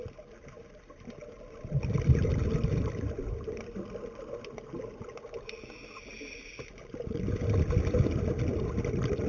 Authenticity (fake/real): real